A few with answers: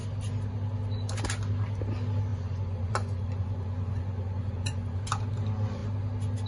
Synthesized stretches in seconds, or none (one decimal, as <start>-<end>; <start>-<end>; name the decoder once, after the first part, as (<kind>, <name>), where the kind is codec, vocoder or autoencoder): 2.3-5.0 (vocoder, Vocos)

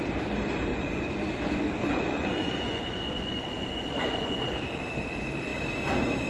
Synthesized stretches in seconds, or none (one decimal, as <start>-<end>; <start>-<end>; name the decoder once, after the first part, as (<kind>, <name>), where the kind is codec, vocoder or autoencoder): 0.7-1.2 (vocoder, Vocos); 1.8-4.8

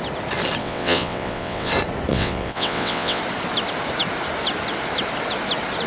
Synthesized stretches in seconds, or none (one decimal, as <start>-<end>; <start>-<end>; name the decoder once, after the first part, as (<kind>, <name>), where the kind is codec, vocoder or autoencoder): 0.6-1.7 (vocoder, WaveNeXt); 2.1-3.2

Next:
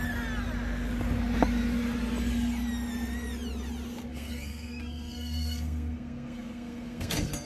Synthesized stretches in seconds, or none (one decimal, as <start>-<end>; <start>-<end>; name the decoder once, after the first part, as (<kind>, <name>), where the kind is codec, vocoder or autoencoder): 4.1-7.5 (codec, SNAC)

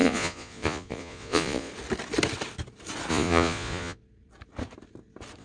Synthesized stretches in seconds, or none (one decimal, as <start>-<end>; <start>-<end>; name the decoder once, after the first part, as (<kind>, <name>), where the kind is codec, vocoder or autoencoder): 0.0-1.7 (vocoder, Vocos); 3.1-4.0

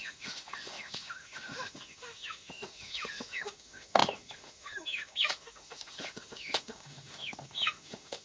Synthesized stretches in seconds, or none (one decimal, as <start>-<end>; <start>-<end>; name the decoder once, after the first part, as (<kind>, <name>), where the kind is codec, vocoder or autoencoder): 0.0-8.2 (autoencoder, DAC-VAE)

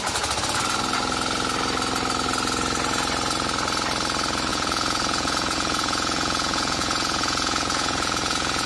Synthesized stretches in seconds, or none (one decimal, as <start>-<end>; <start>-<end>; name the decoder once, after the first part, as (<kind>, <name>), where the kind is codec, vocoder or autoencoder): 4.5-8.7 (vocoder, Vocos)

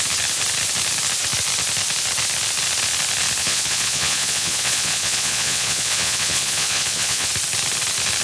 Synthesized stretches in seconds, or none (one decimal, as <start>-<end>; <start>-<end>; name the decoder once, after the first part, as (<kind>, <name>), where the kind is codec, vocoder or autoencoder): 3.4-7.3 (vocoder, Vocos)